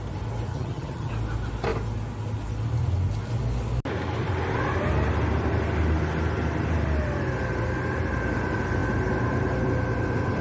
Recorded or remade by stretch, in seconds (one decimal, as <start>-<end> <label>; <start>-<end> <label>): 0.0-0.5 recorded; 0.5-1.1 remade; 1.1-10.4 recorded